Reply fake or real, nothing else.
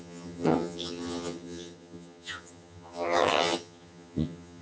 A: fake